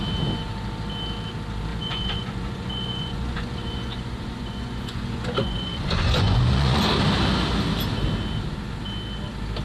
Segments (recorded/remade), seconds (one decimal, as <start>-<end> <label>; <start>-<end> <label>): 0.0-1.7 recorded; 1.7-6.8 remade; 6.8-9.6 recorded